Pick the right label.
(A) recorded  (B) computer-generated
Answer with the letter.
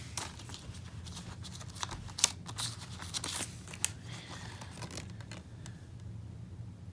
A